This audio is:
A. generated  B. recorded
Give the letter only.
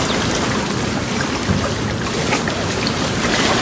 B